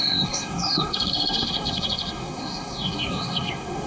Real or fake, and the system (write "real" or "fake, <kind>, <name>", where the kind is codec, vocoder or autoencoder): fake, codec, SNAC